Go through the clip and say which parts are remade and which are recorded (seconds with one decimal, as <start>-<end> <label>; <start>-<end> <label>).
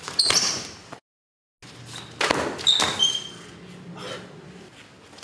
0.0-5.2 recorded